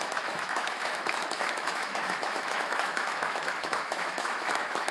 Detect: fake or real fake